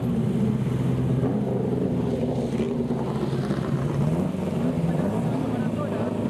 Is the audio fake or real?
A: real